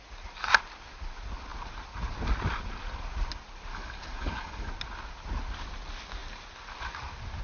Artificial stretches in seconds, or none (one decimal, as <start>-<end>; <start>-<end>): 3.7-4.7